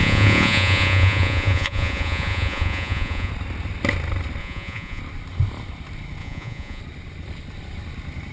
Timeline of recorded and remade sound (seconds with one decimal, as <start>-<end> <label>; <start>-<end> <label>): 0.0-3.3 remade; 3.3-4.4 recorded; 4.4-5.0 remade; 5.0-6.2 recorded; 6.2-6.8 remade; 6.8-8.3 recorded